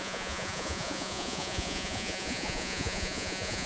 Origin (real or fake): fake